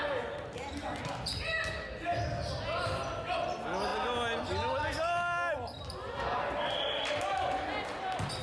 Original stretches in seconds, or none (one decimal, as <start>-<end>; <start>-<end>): 0.0-8.4